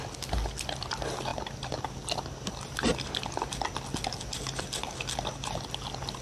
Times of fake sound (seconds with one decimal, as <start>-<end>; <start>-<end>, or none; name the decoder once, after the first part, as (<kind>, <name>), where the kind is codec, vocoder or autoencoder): none

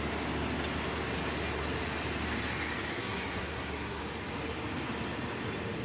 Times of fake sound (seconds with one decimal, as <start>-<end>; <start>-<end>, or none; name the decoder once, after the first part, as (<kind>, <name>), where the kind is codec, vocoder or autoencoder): 2.9-4.0 (codec, SNAC)

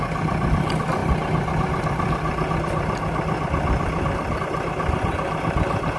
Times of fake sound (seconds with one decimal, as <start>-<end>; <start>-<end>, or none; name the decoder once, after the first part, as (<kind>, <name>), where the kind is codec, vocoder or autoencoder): none